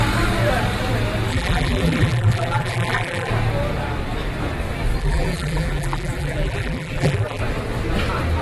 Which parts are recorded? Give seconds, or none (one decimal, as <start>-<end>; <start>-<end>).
0.0-1.3; 3.3-5.0; 7.4-8.4